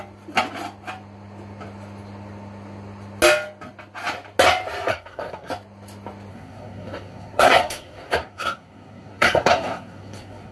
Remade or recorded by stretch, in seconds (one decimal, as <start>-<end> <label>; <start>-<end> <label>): 0.0-4.9 recorded; 4.9-5.5 remade; 5.5-6.3 recorded; 6.3-10.5 remade